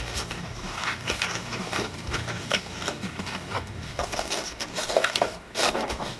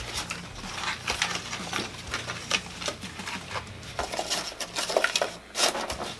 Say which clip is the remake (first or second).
first